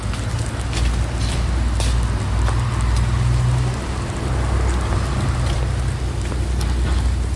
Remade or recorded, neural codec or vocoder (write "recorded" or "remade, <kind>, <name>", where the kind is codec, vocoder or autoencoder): recorded